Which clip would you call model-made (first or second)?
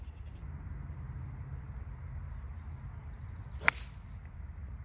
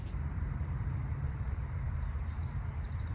second